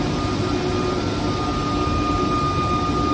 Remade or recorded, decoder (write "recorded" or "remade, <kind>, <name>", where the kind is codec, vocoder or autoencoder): recorded